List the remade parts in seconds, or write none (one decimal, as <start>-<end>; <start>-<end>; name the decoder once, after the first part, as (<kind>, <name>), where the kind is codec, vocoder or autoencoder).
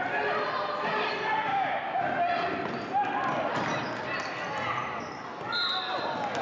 1.5-2.0 (codec, DAC)